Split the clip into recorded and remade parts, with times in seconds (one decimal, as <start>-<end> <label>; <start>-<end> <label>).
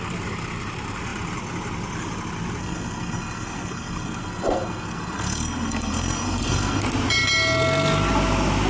0.0-2.6 recorded; 2.6-6.8 remade; 6.8-8.7 recorded